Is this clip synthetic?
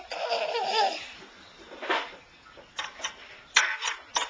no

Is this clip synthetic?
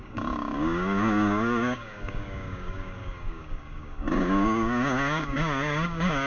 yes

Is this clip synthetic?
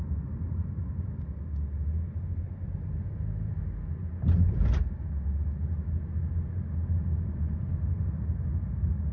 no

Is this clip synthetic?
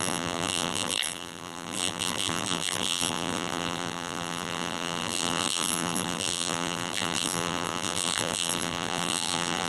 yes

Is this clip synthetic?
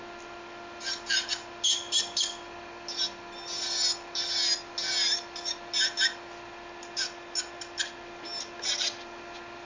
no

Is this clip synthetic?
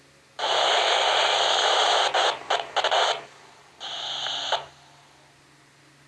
no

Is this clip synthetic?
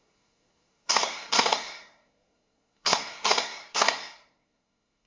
yes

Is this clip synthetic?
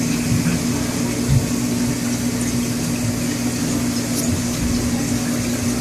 no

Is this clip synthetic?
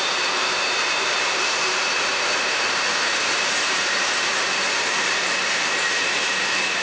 yes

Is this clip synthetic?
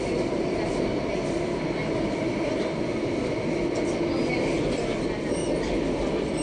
no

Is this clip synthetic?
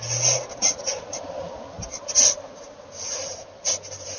no